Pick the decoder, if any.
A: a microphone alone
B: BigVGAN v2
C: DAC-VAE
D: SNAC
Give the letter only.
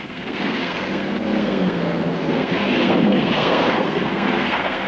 D